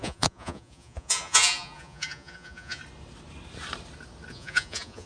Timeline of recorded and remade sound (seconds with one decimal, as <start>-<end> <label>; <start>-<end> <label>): 0.0-2.8 remade; 2.8-4.3 recorded; 4.3-5.1 remade